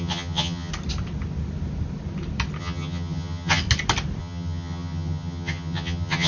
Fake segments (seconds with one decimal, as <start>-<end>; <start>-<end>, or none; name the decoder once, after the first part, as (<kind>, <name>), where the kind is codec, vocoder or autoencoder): 0.0-0.7 (vocoder, HiFi-GAN); 2.6-3.6; 4.2-6.3